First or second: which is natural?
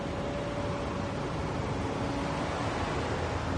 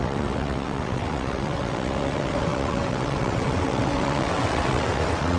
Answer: first